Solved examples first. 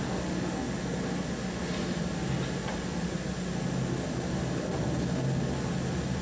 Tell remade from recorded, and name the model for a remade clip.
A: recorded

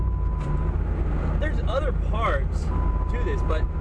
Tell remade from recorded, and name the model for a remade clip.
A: recorded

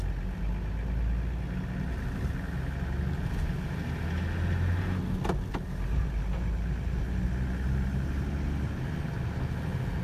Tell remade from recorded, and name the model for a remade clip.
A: recorded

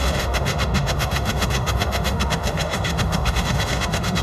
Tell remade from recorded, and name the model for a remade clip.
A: remade, autoencoder, DAC-VAE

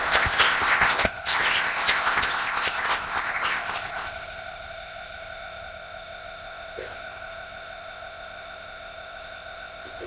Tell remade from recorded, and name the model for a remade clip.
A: remade, codec, ZipCodec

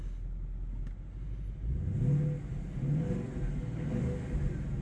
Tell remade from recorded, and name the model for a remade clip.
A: recorded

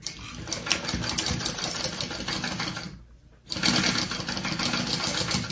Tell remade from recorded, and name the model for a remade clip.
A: recorded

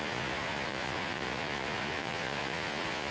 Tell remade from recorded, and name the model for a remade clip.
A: remade, vocoder, Vocos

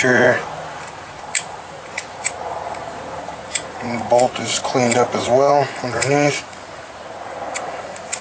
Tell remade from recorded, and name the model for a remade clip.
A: remade, vocoder, Vocos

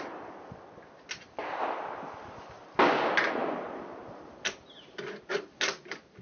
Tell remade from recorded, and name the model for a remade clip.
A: recorded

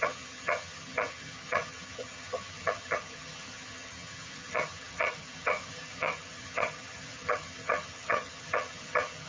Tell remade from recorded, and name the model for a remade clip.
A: remade, vocoder, HiFi-GAN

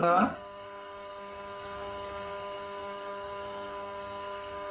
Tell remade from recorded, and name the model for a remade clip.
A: remade, codec, SNAC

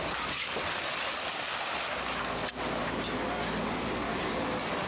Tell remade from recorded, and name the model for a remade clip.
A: recorded